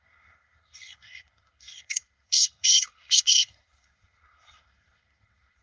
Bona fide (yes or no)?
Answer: no